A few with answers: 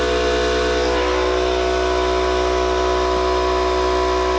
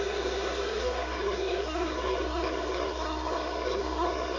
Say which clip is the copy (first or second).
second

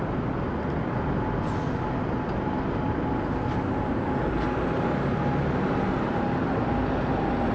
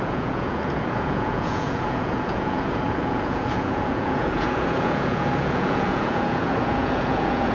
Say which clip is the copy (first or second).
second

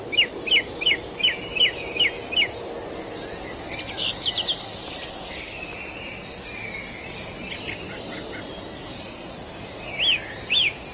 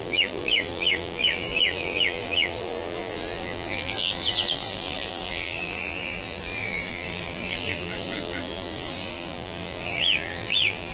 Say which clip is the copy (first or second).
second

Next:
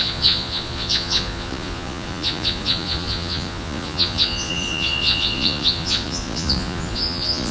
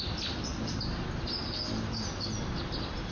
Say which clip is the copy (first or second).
first